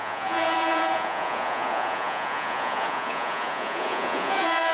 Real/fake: fake